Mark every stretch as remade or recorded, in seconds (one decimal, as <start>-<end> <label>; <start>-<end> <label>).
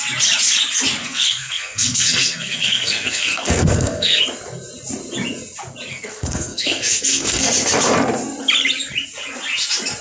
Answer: 0.0-1.0 recorded; 1.0-4.2 remade; 4.2-5.9 recorded; 5.9-7.5 remade; 7.5-10.0 recorded